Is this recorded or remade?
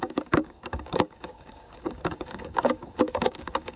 remade